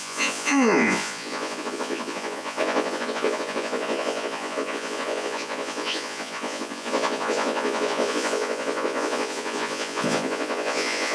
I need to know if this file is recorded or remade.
remade